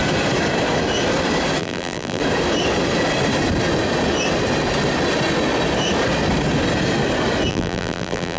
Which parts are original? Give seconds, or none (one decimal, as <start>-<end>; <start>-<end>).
0.0-1.6; 2.2-7.5